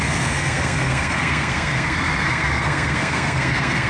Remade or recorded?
remade